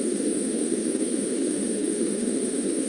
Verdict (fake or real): fake